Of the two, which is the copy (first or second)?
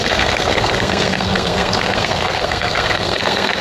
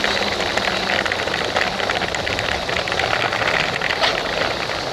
first